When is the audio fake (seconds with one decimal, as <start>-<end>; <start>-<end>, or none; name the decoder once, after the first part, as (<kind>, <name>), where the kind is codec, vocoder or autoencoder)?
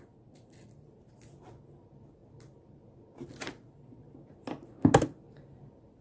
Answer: none